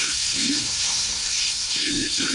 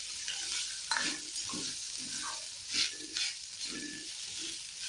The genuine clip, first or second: second